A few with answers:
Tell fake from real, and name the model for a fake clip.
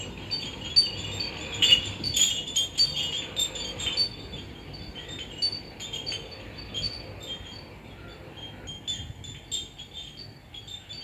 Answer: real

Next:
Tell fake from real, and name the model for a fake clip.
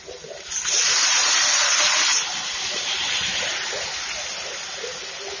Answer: real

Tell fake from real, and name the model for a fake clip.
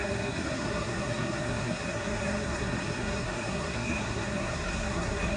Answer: fake, codec, SNAC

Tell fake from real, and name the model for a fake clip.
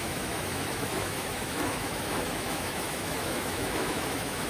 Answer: fake, autoencoder, DAC-VAE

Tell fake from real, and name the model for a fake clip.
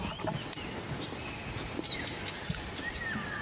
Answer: real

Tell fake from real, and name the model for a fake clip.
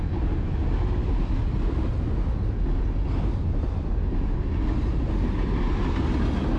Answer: real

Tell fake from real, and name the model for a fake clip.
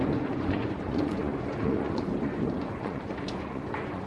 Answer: fake, vocoder, Vocos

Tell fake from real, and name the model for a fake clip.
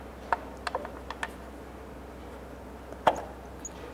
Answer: real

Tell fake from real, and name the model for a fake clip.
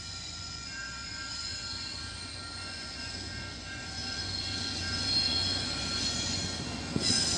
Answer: fake, vocoder, Vocos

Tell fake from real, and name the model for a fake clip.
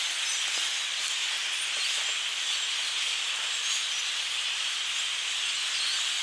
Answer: real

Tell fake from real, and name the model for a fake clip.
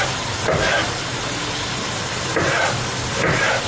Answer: real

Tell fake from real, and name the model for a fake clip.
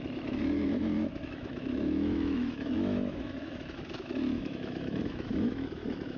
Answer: fake, autoencoder, DAC-VAE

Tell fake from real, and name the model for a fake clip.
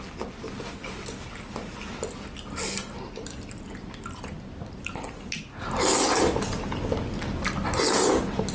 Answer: real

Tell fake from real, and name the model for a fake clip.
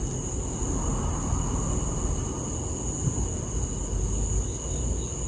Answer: real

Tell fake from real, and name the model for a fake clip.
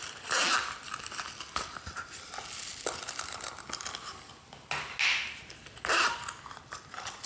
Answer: real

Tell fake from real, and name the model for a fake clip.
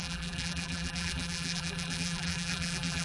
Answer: fake, vocoder, BigVGAN v2